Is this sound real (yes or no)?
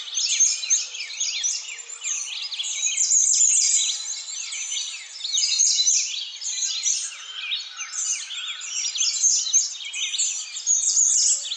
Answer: yes